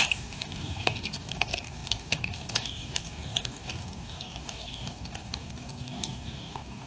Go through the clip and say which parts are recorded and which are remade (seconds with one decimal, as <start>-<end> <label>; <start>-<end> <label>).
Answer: 0.0-6.9 remade